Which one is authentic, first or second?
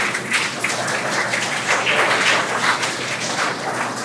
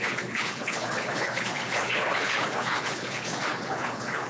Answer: first